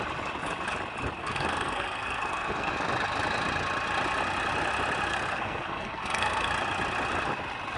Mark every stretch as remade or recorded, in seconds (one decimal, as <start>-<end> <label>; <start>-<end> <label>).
0.0-1.2 recorded; 1.2-2.7 remade; 2.7-5.1 recorded; 5.1-6.5 remade; 6.5-7.8 recorded